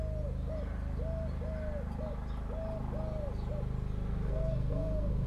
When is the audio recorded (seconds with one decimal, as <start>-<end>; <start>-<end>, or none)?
0.0-4.1